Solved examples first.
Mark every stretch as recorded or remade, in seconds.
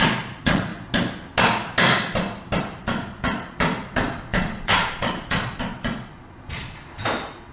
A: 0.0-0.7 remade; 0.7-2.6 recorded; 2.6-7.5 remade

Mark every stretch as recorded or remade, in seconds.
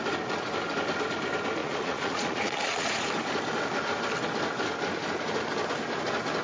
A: 0.0-1.6 recorded; 1.6-3.1 remade; 3.1-6.4 recorded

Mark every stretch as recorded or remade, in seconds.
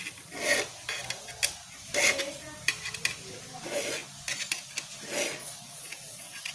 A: 0.0-5.4 recorded; 5.4-6.5 remade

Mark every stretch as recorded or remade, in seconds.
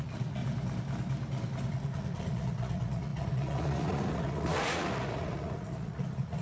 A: 0.0-0.4 remade; 0.4-1.7 recorded; 1.7-6.4 remade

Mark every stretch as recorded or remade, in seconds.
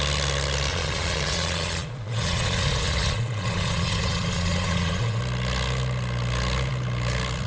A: 0.0-0.7 recorded; 0.7-5.2 remade; 5.2-7.5 recorded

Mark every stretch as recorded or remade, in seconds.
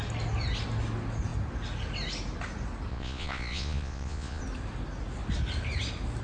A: 0.0-2.9 recorded; 2.9-4.4 remade; 4.4-6.2 recorded